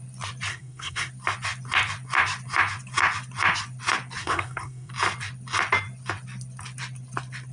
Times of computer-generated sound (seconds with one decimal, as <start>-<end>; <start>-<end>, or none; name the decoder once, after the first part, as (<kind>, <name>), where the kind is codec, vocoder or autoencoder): 0.5-1.1 (codec, SNAC); 4.2-4.9

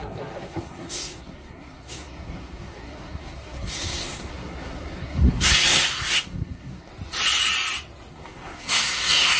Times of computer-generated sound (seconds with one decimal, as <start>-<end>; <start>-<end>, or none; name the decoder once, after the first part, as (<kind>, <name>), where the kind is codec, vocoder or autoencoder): 0.0-6.9 (codec, SNAC); 8.1-9.4

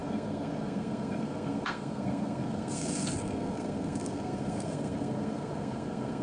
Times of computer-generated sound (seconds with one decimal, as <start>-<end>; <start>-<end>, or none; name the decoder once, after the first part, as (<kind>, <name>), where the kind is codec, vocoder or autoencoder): 0.0-6.2 (codec, SNAC)

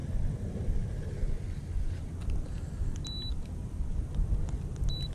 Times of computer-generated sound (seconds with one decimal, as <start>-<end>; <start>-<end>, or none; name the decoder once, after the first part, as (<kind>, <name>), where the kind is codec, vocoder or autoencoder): none

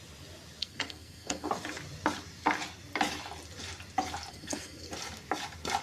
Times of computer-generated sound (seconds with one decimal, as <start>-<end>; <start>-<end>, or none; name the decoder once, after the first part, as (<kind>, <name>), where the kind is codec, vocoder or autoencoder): 0.6-1.5 (codec, SNAC); 4.3-4.9

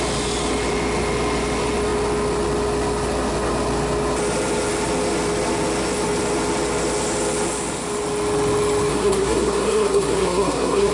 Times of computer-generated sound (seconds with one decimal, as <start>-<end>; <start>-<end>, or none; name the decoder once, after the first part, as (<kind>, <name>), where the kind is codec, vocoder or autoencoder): 8.9-10.9 (codec, SNAC)

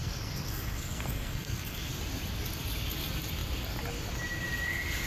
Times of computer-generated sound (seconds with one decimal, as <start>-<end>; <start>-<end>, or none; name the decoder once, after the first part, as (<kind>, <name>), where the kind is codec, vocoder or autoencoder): 0.0-1.9 (codec, SNAC)